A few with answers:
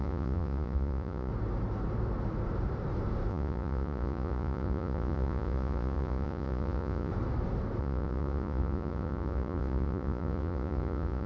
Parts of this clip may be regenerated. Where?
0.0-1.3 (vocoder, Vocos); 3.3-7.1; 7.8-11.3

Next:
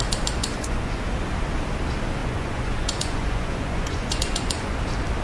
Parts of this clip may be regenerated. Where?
0.4-1.0 (vocoder, Vocos); 2.2-4.8

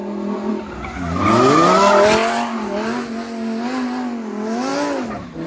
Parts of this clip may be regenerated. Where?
none

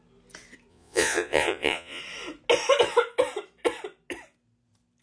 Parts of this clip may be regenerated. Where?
0.7-2.0 (vocoder, Vocos)